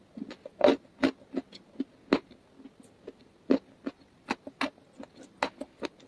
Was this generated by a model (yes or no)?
no